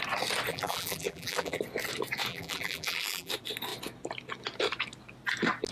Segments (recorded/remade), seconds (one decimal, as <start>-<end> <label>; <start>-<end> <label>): 0.0-0.5 recorded; 0.5-1.6 remade; 1.6-2.3 recorded; 2.3-3.3 remade; 3.3-5.7 recorded